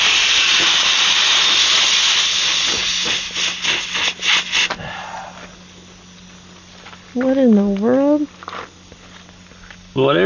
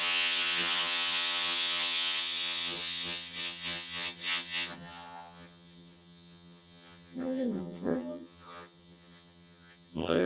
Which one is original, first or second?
first